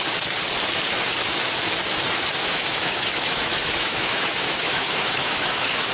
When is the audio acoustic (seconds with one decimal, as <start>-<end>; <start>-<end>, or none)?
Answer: 0.0-2.4